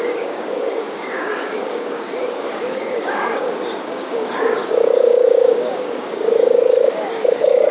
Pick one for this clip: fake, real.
fake